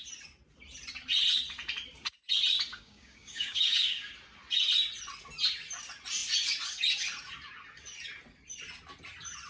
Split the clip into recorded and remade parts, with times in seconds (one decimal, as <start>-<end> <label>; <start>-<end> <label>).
0.0-2.7 recorded; 2.7-4.1 remade; 4.1-9.5 recorded